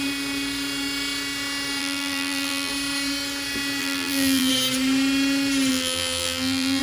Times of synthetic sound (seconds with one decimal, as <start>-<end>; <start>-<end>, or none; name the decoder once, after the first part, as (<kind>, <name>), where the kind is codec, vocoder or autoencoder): 1.8-2.7 (vocoder, BigVGAN v2); 3.8-4.5; 5.7-6.8